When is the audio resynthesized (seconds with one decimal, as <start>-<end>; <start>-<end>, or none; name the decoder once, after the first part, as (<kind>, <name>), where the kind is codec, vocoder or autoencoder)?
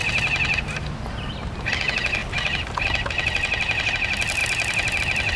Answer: none